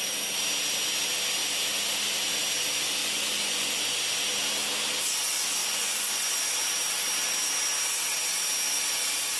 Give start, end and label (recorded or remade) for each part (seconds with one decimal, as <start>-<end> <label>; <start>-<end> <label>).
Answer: 0.0-3.0 recorded; 3.0-4.0 remade; 4.0-5.6 recorded; 5.6-6.4 remade; 6.4-9.4 recorded